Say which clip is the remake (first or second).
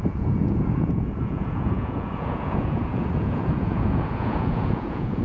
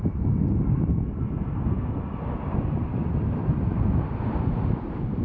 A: first